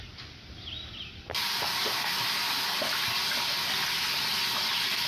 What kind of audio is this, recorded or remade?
recorded